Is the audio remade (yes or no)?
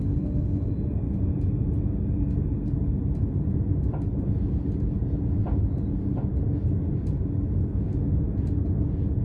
no